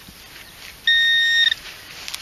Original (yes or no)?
yes